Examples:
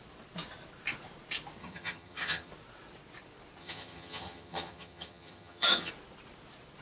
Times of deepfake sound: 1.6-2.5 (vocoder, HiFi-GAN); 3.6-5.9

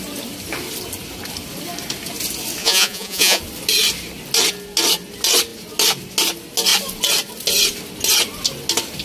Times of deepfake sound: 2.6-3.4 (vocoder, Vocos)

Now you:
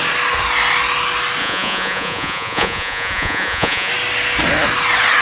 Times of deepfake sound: 1.4-3.9 (vocoder, Vocos)

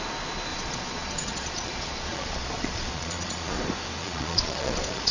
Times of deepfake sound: 0.5-3.6 (vocoder, Vocos); 4.0-5.1

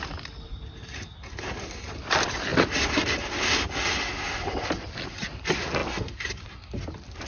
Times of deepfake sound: none

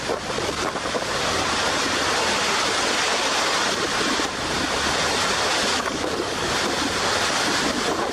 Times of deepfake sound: 5.7-6.5 (codec, DAC)